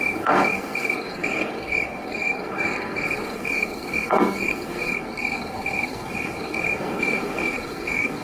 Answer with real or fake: fake